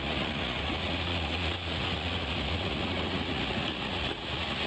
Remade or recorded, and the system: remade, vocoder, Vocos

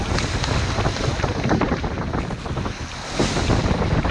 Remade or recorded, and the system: recorded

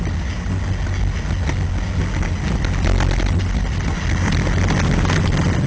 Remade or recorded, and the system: recorded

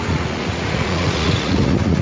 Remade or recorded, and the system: remade, vocoder, Vocos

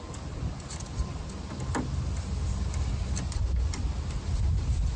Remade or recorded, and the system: recorded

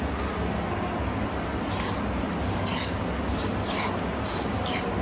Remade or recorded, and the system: recorded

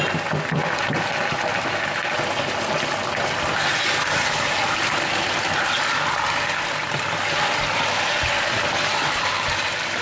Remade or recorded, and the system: recorded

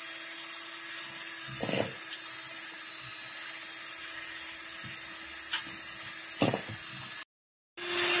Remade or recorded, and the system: recorded